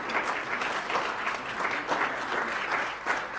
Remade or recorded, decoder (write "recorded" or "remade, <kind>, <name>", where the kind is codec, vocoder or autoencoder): recorded